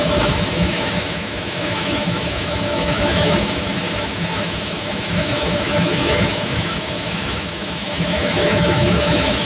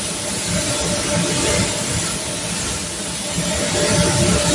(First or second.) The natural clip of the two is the second